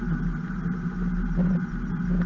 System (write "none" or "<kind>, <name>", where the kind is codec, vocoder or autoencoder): none